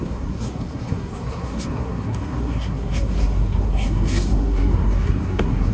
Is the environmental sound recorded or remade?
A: remade